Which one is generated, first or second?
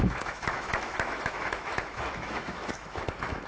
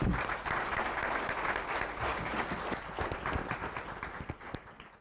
first